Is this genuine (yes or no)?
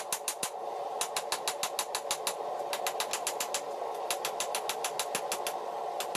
yes